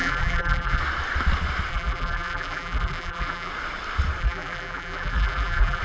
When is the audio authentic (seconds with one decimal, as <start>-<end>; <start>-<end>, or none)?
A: 0.8-1.7; 3.5-4.2